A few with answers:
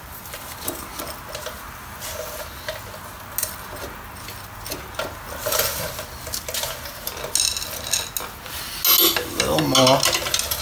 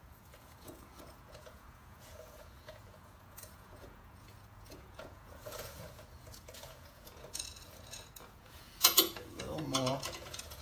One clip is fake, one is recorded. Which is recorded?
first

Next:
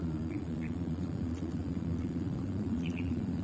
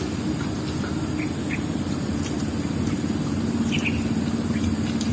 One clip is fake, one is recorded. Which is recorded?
second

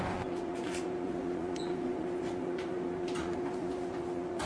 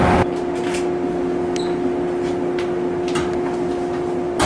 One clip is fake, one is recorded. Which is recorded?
second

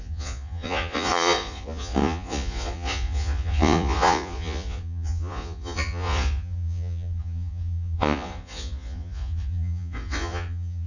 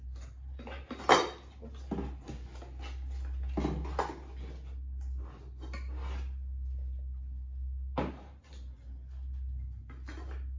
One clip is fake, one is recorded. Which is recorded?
second